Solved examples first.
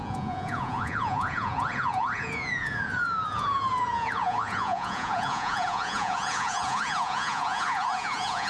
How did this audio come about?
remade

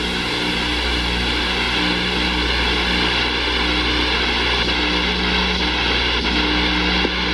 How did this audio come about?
recorded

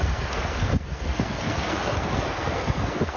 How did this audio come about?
remade